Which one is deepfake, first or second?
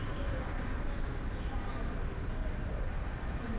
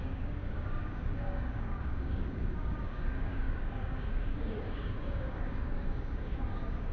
second